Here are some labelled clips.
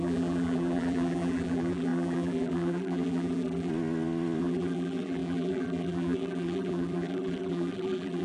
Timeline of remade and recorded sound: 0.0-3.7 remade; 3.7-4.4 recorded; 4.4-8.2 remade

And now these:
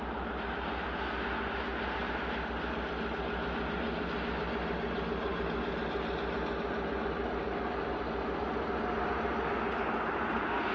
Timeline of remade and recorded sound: 0.0-10.7 recorded

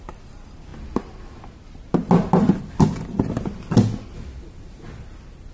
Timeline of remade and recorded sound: 0.0-5.5 recorded